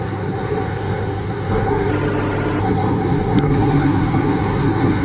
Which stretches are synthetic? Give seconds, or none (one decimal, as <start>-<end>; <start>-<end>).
0.0-1.9; 2.6-5.0